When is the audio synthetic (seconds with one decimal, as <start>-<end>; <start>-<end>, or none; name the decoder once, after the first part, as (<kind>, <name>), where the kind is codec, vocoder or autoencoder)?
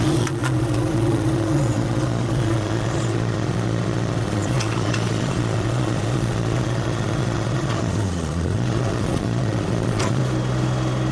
0.0-10.2 (vocoder, Vocos)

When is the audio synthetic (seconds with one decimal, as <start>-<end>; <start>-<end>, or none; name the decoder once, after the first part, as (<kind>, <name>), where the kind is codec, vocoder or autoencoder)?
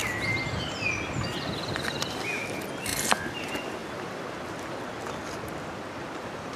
none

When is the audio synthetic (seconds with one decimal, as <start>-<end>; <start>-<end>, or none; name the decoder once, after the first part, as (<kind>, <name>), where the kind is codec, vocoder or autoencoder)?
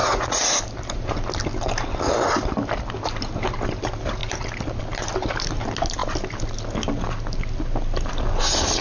0.0-0.6 (vocoder, Vocos)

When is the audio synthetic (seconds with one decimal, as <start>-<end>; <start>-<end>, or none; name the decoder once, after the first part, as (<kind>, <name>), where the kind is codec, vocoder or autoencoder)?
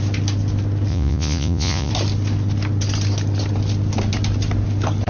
0.9-1.9 (vocoder, Vocos)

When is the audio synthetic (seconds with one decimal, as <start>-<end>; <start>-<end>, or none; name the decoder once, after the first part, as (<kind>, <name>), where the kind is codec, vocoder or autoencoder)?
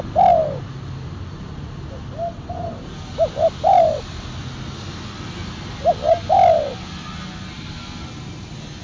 none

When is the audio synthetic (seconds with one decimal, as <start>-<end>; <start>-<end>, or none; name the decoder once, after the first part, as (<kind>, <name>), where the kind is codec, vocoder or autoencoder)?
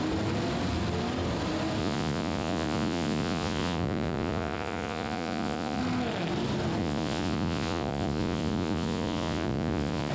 1.8-5.8 (vocoder, Vocos); 6.8-10.1